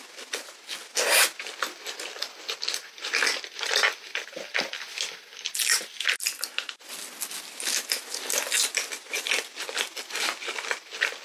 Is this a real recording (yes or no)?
yes